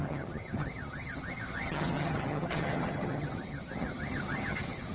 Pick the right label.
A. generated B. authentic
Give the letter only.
A